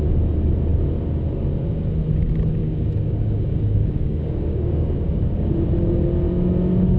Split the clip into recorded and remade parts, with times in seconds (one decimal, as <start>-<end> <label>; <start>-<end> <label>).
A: 0.0-2.6 recorded; 2.6-5.5 remade; 5.5-7.0 recorded